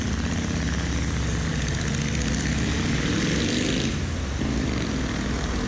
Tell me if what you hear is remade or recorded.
recorded